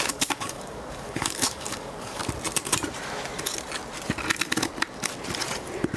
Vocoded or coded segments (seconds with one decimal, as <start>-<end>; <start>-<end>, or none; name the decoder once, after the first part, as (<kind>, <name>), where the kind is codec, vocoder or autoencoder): 0.0-2.2 (codec, DAC)